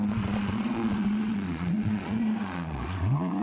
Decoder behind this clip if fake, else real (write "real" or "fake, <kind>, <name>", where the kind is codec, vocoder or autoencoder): fake, vocoder, Vocos